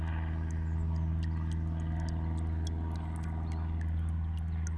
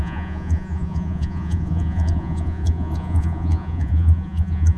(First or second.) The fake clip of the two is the second